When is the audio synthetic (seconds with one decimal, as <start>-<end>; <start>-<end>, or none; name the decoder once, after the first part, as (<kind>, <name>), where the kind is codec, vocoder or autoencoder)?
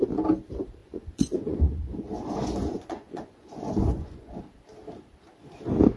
0.8-4.4 (vocoder, Vocos)